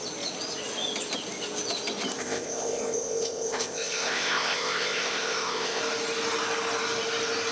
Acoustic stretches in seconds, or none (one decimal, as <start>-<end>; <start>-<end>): 0.0-2.2; 5.8-7.5